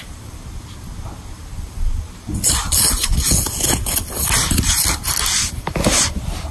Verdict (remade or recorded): recorded